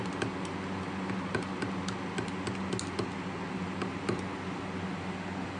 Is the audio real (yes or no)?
yes